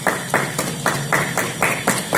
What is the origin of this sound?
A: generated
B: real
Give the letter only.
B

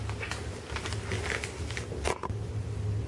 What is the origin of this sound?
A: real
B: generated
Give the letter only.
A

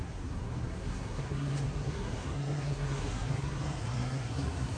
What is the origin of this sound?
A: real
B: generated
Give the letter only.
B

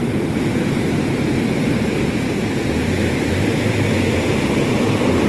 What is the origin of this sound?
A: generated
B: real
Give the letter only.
B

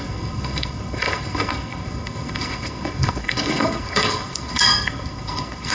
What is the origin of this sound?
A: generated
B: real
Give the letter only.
A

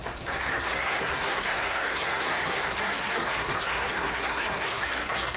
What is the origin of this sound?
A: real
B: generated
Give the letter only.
B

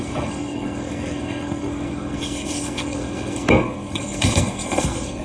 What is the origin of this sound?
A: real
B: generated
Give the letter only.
B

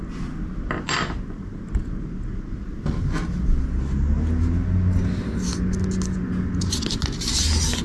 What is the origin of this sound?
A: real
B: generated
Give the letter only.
A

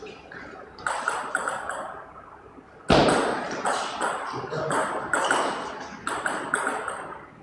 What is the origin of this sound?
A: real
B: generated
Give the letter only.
A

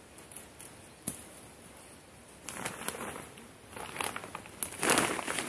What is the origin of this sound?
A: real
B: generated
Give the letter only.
A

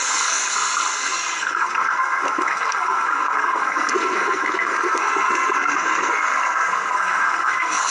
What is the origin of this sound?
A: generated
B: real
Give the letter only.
A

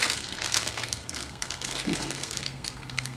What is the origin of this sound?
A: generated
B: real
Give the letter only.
A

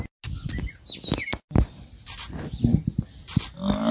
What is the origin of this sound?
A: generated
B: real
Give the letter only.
B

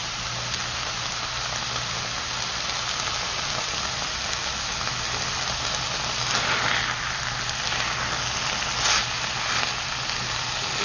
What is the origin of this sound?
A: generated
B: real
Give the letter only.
B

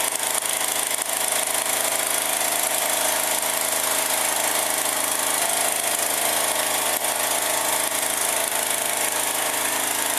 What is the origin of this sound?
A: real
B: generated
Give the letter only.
A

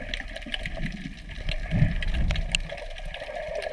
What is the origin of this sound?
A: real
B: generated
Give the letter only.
A